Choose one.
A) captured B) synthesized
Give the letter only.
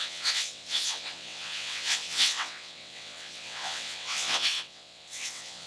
B